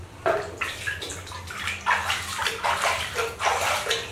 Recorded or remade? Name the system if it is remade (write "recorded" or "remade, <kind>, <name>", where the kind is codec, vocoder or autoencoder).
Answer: recorded